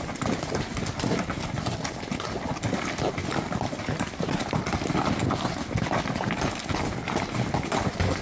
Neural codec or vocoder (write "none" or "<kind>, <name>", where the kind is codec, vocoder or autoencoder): none